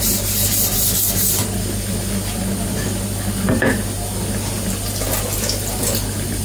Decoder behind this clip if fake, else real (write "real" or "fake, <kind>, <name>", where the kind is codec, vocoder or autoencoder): real